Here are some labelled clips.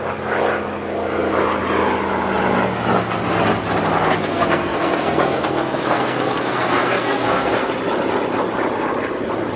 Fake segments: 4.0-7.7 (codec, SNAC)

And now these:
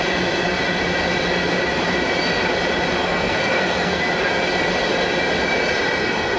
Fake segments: 3.0-4.0 (codec, SNAC)

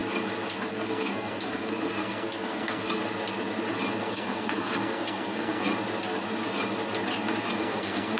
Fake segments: 0.7-3.0 (codec, SNAC); 4.0-5.7; 7.5-8.2

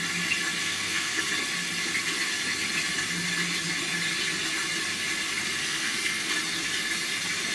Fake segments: 0.6-1.2 (codec, SNAC); 5.6-6.3

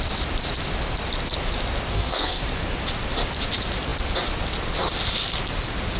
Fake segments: 1.9-2.4 (codec, SNAC)

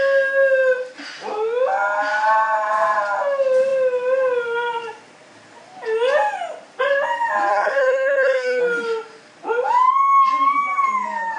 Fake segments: 7.5-8.6 (codec, SNAC)